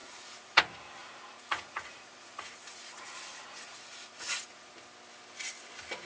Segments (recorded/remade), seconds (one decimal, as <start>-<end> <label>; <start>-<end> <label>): 0.0-0.6 remade; 0.6-1.0 recorded; 1.0-4.7 remade; 4.7-6.1 recorded